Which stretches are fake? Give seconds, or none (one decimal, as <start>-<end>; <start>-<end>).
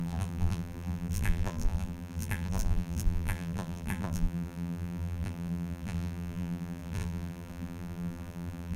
0.0-8.8